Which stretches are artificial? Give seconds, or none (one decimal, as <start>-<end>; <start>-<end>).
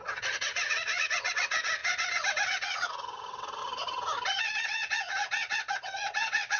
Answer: 0.0-3.6; 4.4-6.6